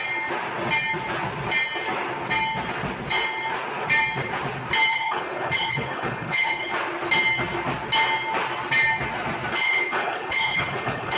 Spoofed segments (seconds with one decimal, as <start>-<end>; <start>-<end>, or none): 4.9-6.7; 9.5-11.2